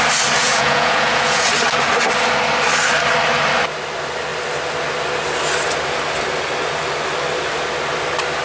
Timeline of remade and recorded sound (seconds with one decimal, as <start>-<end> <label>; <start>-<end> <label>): 0.0-0.4 recorded; 0.4-1.5 remade; 1.5-8.4 recorded